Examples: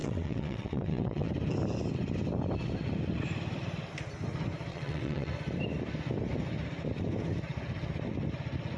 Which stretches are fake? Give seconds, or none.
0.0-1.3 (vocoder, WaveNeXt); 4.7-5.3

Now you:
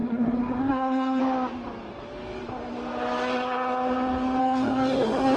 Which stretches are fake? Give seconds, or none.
0.0-1.2 (codec, SNAC); 4.4-5.4

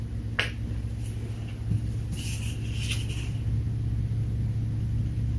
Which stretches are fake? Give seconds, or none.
none

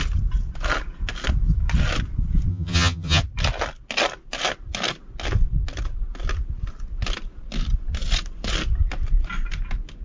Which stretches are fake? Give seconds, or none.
2.5-3.2 (vocoder, HiFi-GAN)

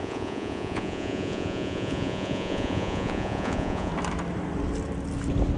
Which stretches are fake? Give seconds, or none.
0.0-3.9 (vocoder, Vocos)

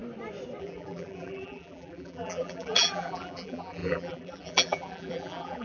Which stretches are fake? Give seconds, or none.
0.6-5.6 (vocoder, BigVGAN v2)

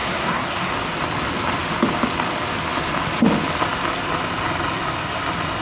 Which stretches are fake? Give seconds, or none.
0.0-0.7 (codec, SNAC)